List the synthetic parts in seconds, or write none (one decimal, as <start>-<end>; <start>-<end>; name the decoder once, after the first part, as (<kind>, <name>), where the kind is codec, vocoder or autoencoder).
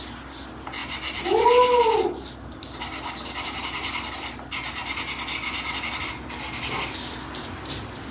none